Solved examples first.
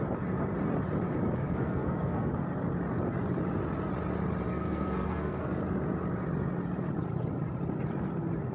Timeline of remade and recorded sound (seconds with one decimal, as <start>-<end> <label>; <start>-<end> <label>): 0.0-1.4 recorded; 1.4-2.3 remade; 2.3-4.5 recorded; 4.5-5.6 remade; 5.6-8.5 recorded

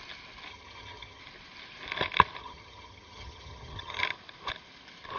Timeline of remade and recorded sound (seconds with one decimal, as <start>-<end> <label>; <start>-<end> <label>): 0.0-0.5 recorded; 0.5-1.2 remade; 1.2-2.4 recorded; 2.4-4.0 remade; 4.0-5.2 recorded

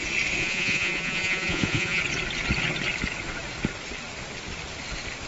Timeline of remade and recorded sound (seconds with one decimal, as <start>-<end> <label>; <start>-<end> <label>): 0.0-0.4 recorded; 0.4-2.0 remade; 2.0-5.3 recorded

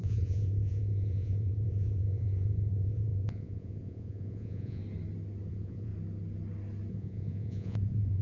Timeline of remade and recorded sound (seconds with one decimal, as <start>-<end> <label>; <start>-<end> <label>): 0.0-4.8 remade; 4.8-5.5 recorded; 5.5-5.9 remade; 5.9-6.9 recorded; 6.9-8.2 remade

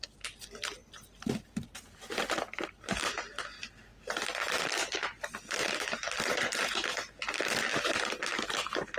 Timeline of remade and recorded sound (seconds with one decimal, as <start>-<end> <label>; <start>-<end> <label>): 0.0-0.8 recorded; 0.8-1.7 remade; 1.7-3.9 recorded; 3.9-4.7 remade; 4.7-7.7 recorded; 7.7-8.6 remade; 8.6-9.0 recorded